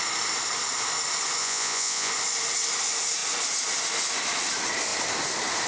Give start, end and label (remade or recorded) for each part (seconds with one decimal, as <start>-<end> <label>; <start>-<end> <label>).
0.0-1.4 recorded; 1.4-2.1 remade; 2.1-5.7 recorded